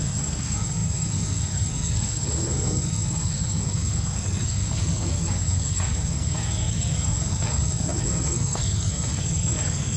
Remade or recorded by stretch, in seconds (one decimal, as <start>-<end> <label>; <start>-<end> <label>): 0.0-10.0 remade